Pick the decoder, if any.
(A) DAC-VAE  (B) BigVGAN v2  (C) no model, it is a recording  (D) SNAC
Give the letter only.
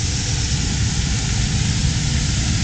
C